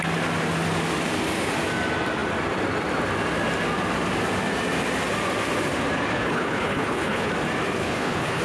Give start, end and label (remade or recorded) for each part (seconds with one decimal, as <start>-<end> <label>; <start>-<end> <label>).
0.0-6.1 recorded; 6.1-7.3 remade; 7.3-7.8 recorded; 7.8-8.4 remade

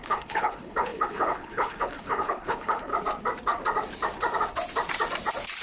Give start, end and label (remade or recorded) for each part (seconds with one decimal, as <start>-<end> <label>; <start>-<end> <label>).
0.0-2.9 remade; 2.9-5.6 recorded

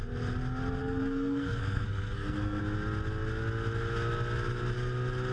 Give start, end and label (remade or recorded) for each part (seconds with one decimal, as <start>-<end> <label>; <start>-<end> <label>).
0.0-0.8 recorded; 0.8-2.6 remade; 2.6-5.3 recorded

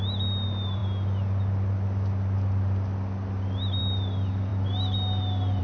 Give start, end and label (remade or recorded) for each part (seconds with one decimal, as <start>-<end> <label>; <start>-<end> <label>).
0.0-5.6 recorded

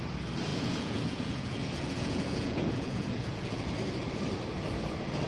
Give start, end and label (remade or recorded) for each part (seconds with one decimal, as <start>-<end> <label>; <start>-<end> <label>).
0.0-0.5 recorded; 0.5-3.7 remade; 3.7-5.3 recorded

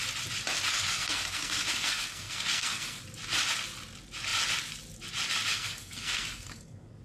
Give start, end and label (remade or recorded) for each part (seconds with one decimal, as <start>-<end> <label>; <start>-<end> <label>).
0.0-0.7 recorded; 0.7-3.0 remade; 3.0-5.5 recorded; 5.5-7.0 remade

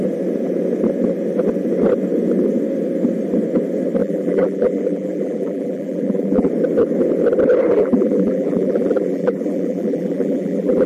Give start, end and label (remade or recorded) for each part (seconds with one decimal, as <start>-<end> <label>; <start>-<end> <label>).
0.0-4.0 recorded; 4.0-6.5 remade; 6.5-7.7 recorded; 7.7-10.9 remade

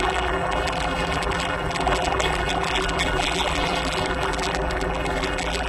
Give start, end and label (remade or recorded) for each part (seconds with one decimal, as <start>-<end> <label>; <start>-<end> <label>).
0.0-5.7 remade